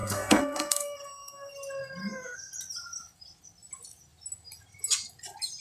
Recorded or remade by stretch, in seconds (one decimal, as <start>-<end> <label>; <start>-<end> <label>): 0.0-1.5 remade; 1.5-2.0 recorded; 2.0-2.5 remade; 2.5-5.6 recorded